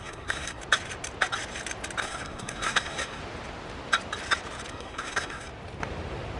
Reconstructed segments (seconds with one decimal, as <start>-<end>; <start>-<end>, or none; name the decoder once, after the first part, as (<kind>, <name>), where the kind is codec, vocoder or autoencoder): 0.0-0.6 (codec, SNAC); 2.0-3.2; 4.7-5.5